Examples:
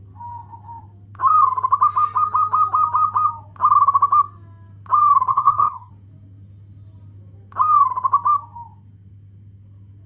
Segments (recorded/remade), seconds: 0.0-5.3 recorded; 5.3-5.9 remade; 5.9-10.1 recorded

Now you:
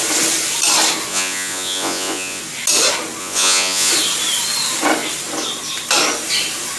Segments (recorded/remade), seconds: 0.0-1.1 recorded; 1.1-2.4 remade; 2.4-3.2 recorded; 3.2-3.9 remade; 3.9-6.8 recorded

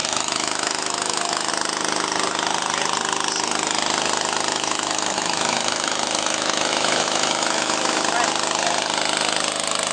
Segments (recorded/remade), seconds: 0.0-1.5 remade; 1.5-4.5 recorded; 4.5-8.0 remade; 8.0-9.9 recorded

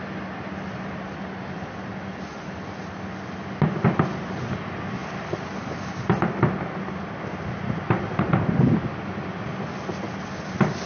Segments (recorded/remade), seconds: 0.0-10.9 recorded

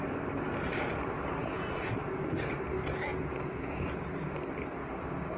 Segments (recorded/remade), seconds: 0.0-1.4 recorded; 1.4-1.9 remade; 1.9-3.1 recorded; 3.1-3.9 remade; 3.9-5.4 recorded

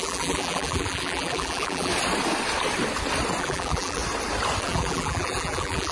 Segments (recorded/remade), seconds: 0.0-1.9 remade; 1.9-3.4 recorded; 3.4-4.0 remade; 4.0-4.6 recorded; 4.6-5.9 remade